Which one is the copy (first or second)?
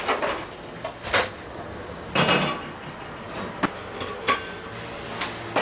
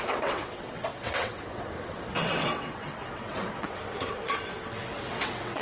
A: second